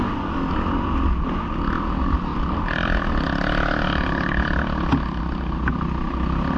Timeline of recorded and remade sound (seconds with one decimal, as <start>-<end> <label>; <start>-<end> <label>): 0.0-6.6 recorded